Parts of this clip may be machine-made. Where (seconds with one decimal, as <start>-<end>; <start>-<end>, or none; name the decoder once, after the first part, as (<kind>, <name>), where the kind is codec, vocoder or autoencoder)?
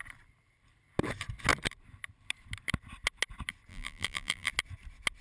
3.7-4.5 (vocoder, BigVGAN v2)